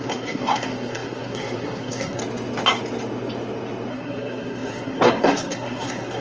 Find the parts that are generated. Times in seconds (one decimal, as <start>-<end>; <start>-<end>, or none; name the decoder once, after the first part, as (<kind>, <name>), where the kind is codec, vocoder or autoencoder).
0.0-2.2 (codec, SNAC); 3.9-6.2